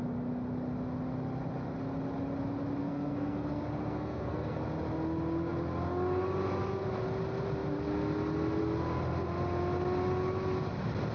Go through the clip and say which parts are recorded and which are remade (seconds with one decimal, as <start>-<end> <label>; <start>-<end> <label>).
0.0-2.8 recorded; 2.8-4.6 remade; 4.6-11.1 recorded